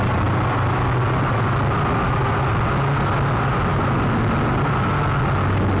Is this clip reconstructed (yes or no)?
no